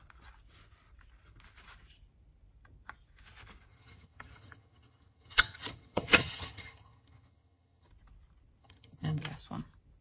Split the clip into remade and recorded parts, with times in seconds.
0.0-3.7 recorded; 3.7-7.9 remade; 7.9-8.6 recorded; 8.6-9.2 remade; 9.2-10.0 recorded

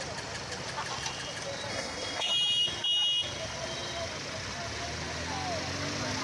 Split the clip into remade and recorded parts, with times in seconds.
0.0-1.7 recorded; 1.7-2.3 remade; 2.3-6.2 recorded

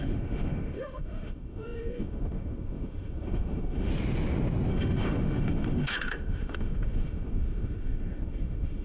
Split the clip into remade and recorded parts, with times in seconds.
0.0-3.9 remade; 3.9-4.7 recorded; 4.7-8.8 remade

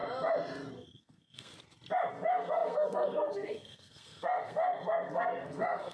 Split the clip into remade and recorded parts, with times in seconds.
0.0-0.7 recorded; 0.7-1.5 remade; 1.5-2.1 recorded; 2.1-5.9 remade